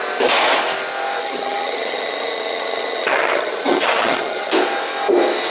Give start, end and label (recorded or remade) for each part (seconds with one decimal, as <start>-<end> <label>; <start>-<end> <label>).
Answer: 0.0-1.2 recorded; 1.2-4.5 remade; 4.5-5.5 recorded